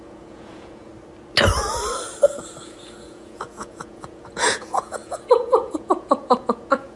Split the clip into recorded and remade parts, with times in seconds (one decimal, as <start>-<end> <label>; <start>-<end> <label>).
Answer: 0.0-0.9 remade; 0.9-2.6 recorded; 2.6-7.0 remade